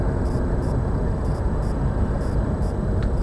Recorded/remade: recorded